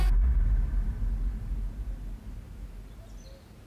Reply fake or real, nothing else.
real